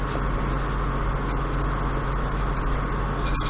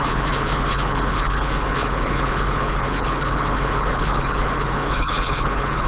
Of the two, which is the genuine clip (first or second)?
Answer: first